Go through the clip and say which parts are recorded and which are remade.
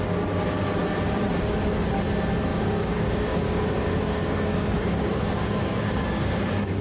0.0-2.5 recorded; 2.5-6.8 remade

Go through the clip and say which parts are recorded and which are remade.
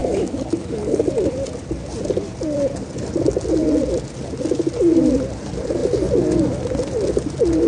0.0-1.0 remade; 1.0-7.7 recorded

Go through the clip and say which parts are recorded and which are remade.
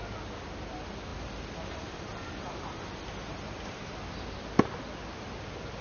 0.0-5.8 recorded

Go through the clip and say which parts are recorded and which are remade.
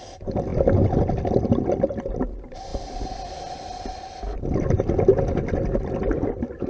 0.0-6.7 recorded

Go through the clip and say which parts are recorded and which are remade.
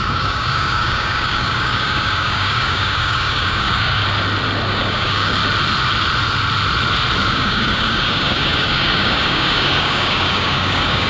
0.0-4.0 remade; 4.0-4.7 recorded; 4.7-5.4 remade; 5.4-7.3 recorded; 7.3-11.1 remade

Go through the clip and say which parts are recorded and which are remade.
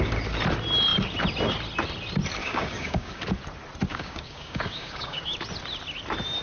0.0-2.4 recorded; 2.4-3.2 remade; 3.2-3.9 recorded; 3.9-5.2 remade; 5.2-6.4 recorded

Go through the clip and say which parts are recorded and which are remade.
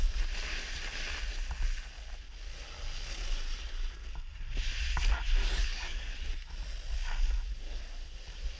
0.0-5.4 recorded; 5.4-6.3 remade; 6.3-8.6 recorded